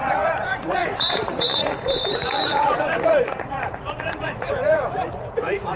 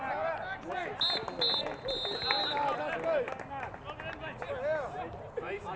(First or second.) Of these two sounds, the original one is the second